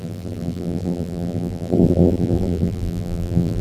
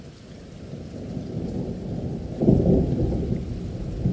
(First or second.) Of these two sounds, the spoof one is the first